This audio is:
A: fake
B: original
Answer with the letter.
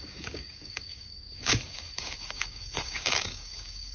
A